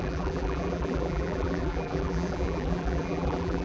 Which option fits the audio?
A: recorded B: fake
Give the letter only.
B